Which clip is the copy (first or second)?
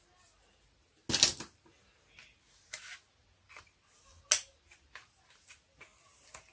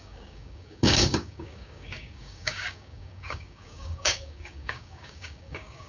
second